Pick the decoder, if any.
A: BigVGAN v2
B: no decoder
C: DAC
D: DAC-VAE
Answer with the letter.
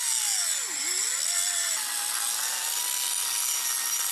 B